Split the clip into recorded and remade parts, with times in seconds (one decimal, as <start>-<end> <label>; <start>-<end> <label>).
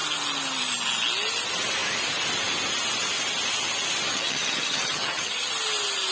0.0-4.1 recorded; 4.1-5.5 remade; 5.5-6.1 recorded